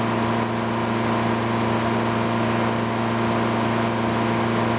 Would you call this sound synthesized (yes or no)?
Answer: no